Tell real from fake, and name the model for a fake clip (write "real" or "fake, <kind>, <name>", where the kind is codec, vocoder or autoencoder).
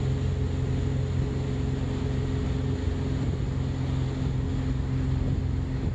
real